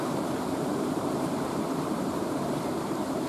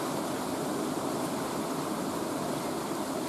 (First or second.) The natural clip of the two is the second